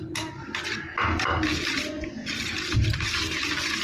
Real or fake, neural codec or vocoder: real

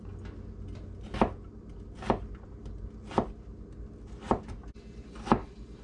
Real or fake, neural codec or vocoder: real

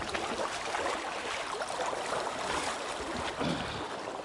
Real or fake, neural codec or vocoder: real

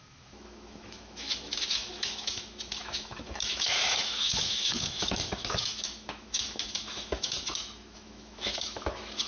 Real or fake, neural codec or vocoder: fake, autoencoder, DAC-VAE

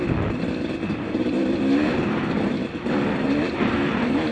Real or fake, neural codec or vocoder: real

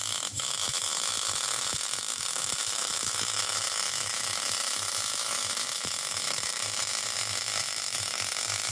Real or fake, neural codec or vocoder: fake, autoencoder, DAC-VAE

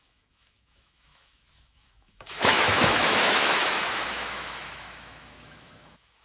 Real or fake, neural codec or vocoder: fake, autoencoder, DAC-VAE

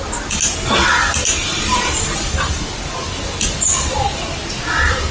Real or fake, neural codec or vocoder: real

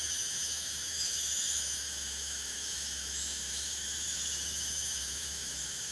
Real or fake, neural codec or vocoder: fake, autoencoder, DAC-VAE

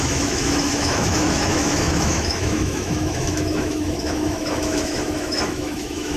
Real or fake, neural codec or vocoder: fake, autoencoder, DAC-VAE